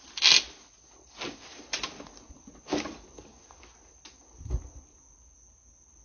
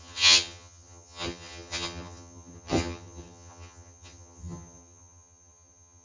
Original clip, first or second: first